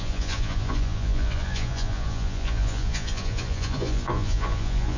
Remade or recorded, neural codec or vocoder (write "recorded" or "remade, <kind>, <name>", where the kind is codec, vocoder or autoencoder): remade, vocoder, Vocos